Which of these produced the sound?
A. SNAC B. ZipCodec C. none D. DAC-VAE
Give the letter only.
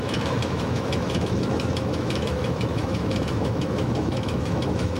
D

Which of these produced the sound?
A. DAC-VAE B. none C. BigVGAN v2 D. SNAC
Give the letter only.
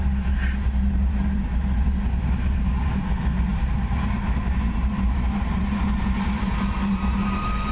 C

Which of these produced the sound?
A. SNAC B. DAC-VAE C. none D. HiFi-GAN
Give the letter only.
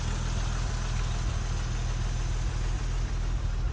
C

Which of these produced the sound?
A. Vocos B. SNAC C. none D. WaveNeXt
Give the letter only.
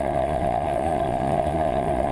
A